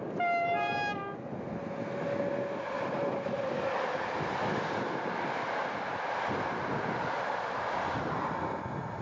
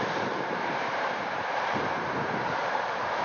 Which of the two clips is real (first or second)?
first